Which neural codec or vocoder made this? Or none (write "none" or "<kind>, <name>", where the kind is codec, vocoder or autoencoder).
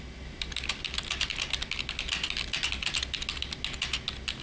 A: none